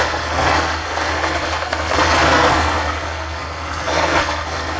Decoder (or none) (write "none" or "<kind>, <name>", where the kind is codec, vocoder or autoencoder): codec, SNAC